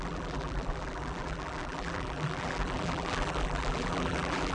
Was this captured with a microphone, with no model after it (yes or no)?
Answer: no